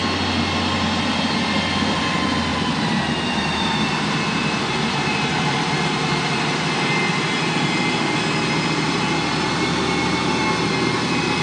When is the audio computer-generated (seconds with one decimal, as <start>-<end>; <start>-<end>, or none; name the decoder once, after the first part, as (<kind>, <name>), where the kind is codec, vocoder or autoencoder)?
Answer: 2.5-6.9 (vocoder, BigVGAN v2)